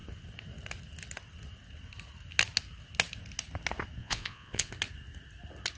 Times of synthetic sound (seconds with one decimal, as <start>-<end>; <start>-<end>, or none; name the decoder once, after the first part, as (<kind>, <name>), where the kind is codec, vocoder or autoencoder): 4.0-4.7 (vocoder, Vocos)